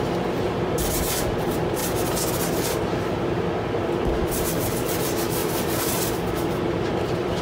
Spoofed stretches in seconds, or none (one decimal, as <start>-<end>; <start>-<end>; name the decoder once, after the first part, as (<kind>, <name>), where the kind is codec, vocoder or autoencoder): 0.0-1.8 (vocoder, BigVGAN v2); 4.3-7.4